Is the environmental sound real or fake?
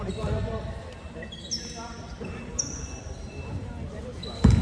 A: fake